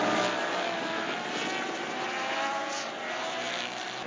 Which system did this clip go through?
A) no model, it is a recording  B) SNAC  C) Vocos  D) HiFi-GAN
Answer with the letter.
A